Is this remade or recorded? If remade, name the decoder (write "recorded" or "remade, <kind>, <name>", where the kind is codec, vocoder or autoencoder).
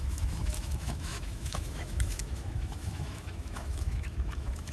remade, autoencoder, DAC-VAE